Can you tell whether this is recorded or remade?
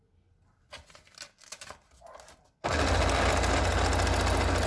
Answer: recorded